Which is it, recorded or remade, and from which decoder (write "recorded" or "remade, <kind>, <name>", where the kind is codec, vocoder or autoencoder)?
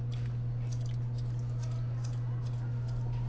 recorded